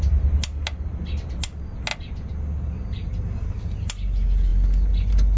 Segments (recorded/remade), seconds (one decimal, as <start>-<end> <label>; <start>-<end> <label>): 0.0-5.4 recorded